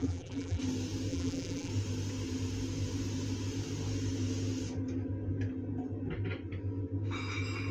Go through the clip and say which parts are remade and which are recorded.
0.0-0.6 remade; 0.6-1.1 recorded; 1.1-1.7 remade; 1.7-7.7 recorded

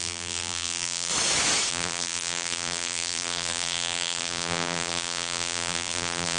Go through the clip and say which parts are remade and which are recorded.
0.0-1.1 remade; 1.1-1.7 recorded; 1.7-6.4 remade

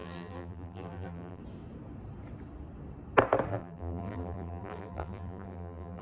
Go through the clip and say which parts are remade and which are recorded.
0.0-1.4 remade; 1.4-3.5 recorded; 3.5-6.0 remade

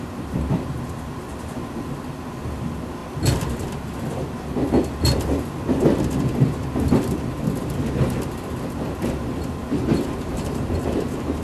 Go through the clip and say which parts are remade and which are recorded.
0.0-10.3 recorded; 10.3-11.4 remade

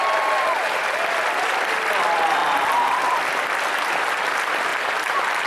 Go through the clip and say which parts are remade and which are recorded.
0.0-5.5 remade